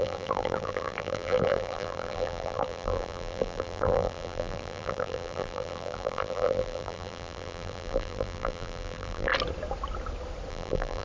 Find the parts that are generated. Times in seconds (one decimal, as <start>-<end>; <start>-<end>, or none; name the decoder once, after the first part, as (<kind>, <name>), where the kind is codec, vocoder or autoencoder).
0.0-9.3 (vocoder, BigVGAN v2); 10.5-11.0

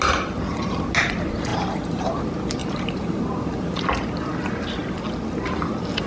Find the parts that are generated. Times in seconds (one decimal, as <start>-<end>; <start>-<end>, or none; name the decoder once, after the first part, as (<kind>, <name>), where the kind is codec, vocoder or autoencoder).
1.5-2.2 (vocoder, BigVGAN v2); 2.6-3.2

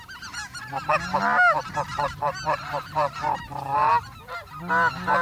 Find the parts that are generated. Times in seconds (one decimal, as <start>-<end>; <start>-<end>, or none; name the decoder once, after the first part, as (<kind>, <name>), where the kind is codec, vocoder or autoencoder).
1.6-3.9 (vocoder, BigVGAN v2)

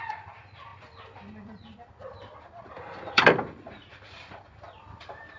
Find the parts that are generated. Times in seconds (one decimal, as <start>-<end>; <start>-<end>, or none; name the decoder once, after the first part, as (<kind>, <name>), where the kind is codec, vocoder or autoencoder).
0.0-5.4 (vocoder, BigVGAN v2)

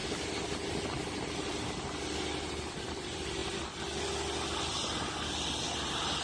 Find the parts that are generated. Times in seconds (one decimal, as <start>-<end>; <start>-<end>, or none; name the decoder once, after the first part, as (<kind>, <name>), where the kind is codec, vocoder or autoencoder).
2.8-3.4 (vocoder, BigVGAN v2); 5.2-6.2

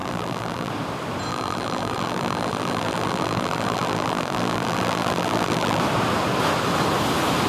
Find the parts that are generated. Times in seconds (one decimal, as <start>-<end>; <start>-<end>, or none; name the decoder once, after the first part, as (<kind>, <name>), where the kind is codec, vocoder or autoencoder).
0.0-0.7 (vocoder, BigVGAN v2); 1.3-5.8

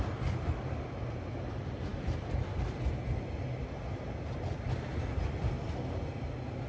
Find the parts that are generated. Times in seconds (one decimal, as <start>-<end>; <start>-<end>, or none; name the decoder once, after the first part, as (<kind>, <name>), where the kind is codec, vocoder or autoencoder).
1.9-2.5 (vocoder, BigVGAN v2)